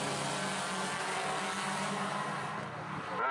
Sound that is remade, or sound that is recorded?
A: recorded